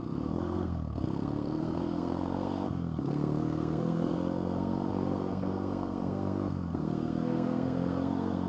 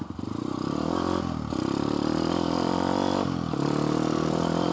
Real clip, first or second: second